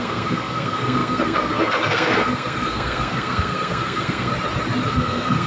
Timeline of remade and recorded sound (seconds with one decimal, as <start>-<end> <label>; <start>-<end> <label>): 0.0-4.3 remade; 4.3-4.9 recorded; 4.9-5.5 remade